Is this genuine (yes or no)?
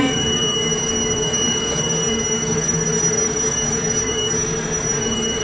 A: no